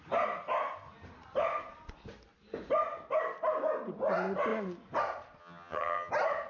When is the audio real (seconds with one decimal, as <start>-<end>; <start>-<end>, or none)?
0.0-5.4; 6.1-6.5